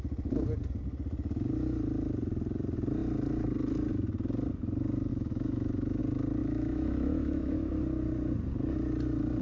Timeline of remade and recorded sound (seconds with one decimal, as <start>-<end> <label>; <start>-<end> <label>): 0.0-5.1 recorded; 5.1-6.0 remade; 6.0-6.4 recorded; 6.4-7.7 remade; 7.7-9.4 recorded